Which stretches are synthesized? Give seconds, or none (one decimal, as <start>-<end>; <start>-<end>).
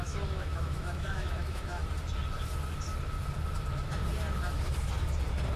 0.0-1.8